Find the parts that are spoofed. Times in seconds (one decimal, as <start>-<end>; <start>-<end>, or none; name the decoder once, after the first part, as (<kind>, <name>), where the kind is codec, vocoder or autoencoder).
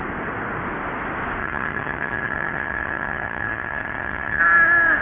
1.4-4.4 (vocoder, HiFi-GAN)